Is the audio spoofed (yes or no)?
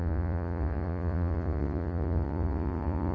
yes